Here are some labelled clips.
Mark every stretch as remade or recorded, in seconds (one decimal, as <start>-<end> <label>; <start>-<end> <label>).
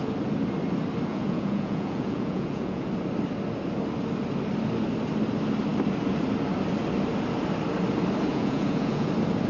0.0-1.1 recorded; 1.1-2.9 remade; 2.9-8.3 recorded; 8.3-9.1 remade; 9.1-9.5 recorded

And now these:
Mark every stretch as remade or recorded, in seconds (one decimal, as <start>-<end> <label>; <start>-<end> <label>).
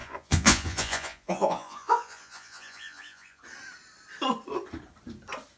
0.0-3.4 remade; 3.4-5.6 recorded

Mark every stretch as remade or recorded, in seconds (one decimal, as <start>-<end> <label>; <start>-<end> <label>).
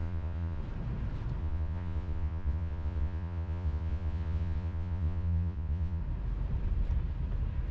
0.0-0.6 remade; 0.6-1.4 recorded; 1.4-6.0 remade; 6.0-7.7 recorded